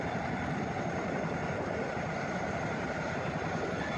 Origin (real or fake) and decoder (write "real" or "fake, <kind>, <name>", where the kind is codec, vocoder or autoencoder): real